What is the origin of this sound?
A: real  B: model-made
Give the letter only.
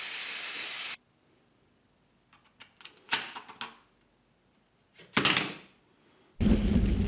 A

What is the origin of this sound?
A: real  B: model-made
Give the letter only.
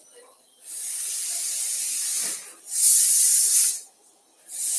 A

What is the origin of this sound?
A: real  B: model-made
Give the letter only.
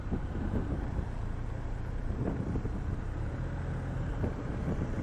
B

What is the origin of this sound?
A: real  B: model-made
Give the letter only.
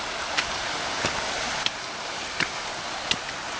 A